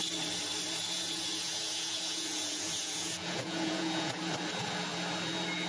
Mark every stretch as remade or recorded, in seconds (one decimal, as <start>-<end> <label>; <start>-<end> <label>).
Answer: 0.0-0.8 recorded; 0.8-4.2 remade; 4.2-5.7 recorded

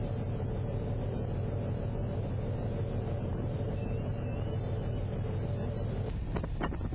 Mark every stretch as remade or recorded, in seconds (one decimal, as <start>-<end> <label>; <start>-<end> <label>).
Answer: 0.0-6.9 recorded

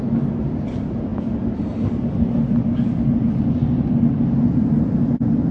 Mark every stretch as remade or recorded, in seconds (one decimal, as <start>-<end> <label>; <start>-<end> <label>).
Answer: 0.0-1.1 recorded; 1.1-4.4 remade; 4.4-5.5 recorded

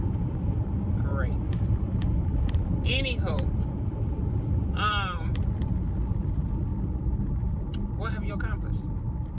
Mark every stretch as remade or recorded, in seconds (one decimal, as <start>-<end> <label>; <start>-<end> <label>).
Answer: 0.0-9.4 remade

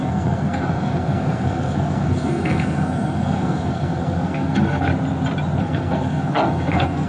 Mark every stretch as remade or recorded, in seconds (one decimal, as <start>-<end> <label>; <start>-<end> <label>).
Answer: 0.0-4.9 remade; 4.9-5.6 recorded; 5.6-7.1 remade

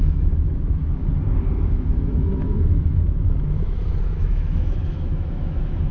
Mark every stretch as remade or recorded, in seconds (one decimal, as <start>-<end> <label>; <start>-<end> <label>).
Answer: 0.0-1.0 remade; 1.0-1.7 recorded; 1.7-5.9 remade

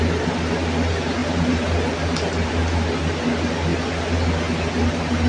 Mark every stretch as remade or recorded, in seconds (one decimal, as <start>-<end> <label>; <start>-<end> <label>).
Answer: 0.0-5.3 recorded

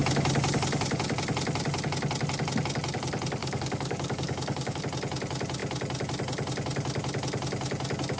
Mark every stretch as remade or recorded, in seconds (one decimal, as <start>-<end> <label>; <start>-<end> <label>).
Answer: 0.0-3.4 recorded; 3.4-4.8 remade; 4.8-8.2 recorded